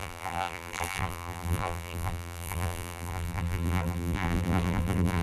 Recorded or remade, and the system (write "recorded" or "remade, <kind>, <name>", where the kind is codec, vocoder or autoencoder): remade, vocoder, BigVGAN v2